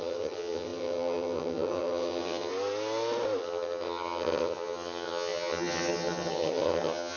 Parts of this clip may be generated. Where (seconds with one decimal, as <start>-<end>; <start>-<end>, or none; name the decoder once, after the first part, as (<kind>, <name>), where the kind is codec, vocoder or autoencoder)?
0.0-2.5 (vocoder, HiFi-GAN); 3.4-7.2